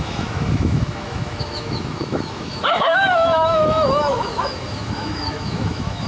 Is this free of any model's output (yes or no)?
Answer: no